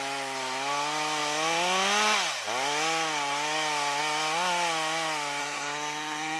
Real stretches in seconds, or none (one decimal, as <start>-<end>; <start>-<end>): 0.0-5.4